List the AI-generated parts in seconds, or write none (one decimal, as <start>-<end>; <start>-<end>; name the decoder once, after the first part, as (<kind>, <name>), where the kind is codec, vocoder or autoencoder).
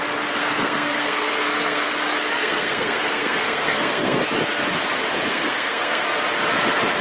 0.4-1.9 (codec, SNAC); 2.4-4.2; 5.3-6.0